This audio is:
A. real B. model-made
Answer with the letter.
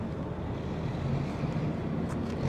A